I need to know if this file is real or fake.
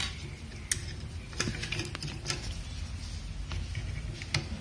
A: real